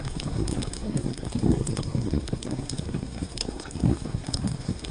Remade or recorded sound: remade